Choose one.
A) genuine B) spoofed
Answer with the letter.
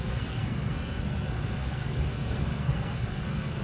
B